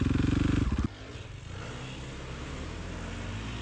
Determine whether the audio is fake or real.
real